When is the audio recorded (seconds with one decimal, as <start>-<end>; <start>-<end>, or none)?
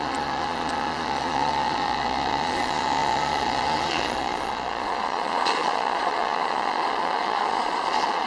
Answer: none